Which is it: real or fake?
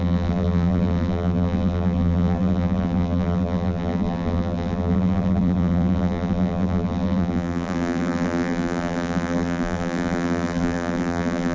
fake